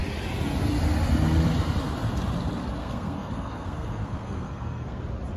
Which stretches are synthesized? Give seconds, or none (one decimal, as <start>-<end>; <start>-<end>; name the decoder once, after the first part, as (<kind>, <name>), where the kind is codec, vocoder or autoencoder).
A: 2.8-5.0 (codec, SNAC)